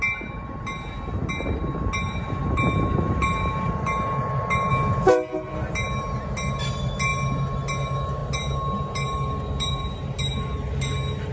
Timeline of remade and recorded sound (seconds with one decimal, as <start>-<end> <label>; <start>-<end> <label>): 0.0-11.3 recorded